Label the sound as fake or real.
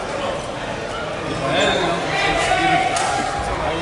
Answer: real